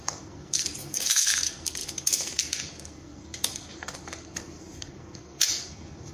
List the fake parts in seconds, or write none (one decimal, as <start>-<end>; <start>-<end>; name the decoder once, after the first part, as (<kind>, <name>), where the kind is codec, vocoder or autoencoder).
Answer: 0.0-6.1 (codec, SNAC)